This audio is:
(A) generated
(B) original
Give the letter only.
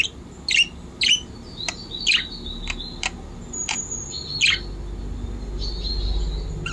B